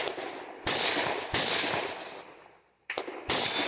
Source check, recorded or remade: remade